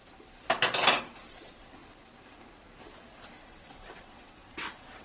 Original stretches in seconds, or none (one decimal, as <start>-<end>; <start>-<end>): 0.0-1.3; 1.8-3.4